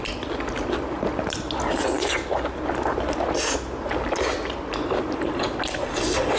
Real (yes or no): yes